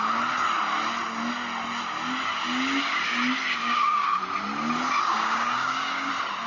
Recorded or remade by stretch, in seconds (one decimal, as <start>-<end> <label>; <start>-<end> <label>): 0.0-3.6 recorded; 3.6-4.2 remade; 4.2-5.1 recorded; 5.1-6.1 remade; 6.1-6.5 recorded